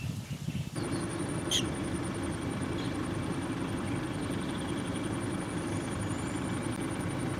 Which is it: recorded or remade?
remade